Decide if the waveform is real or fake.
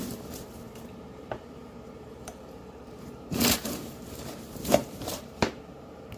fake